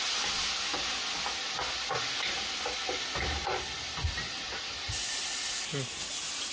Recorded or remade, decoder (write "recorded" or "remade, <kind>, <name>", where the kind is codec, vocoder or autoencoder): recorded